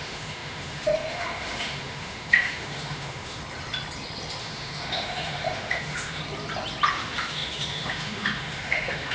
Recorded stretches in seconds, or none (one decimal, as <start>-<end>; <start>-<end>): 3.4-4.4; 6.2-6.9